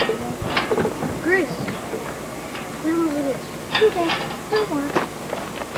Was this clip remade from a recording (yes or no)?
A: yes